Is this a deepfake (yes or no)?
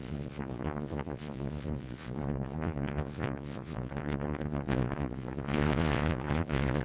yes